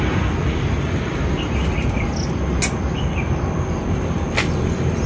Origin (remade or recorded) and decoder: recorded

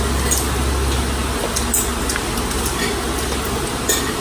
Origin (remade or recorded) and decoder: recorded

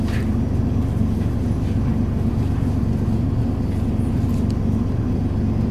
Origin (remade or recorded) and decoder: recorded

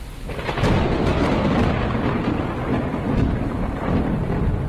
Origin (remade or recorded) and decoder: recorded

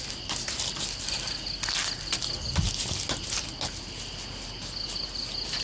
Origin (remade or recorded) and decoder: recorded